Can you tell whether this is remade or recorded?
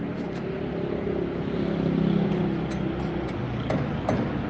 recorded